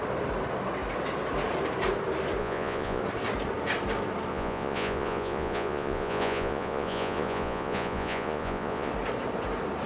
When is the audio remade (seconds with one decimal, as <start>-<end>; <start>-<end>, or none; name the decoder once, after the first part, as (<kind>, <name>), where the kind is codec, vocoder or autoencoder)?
2.4-3.0 (vocoder, Vocos); 4.3-8.9